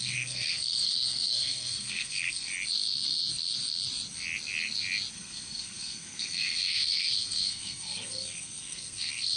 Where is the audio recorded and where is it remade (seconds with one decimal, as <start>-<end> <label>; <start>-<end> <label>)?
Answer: 0.0-2.5 remade; 2.5-5.1 recorded; 5.1-9.4 remade